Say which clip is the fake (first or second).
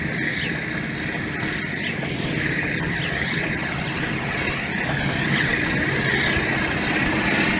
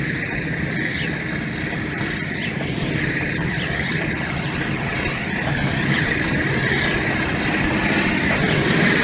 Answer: second